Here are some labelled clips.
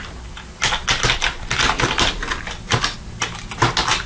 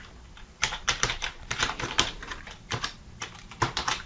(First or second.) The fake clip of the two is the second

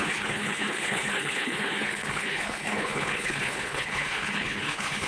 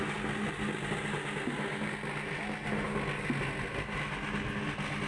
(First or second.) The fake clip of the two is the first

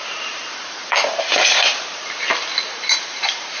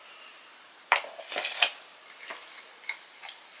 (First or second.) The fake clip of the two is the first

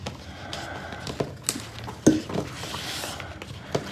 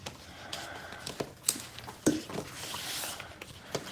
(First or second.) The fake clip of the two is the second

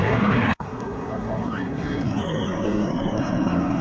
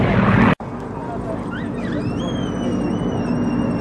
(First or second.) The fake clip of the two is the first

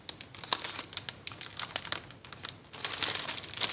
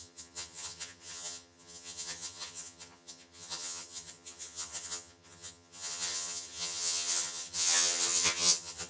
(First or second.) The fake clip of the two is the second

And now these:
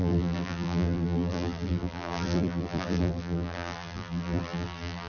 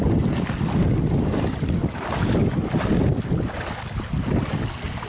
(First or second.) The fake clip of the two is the first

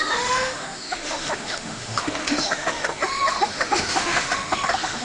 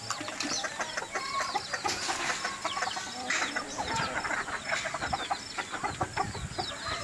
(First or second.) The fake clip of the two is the first